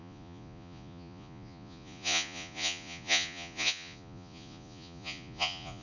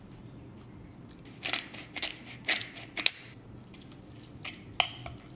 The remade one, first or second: first